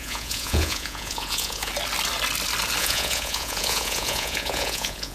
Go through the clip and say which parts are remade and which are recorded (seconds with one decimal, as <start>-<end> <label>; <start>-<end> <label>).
0.0-1.7 remade; 1.7-2.8 recorded; 2.8-5.1 remade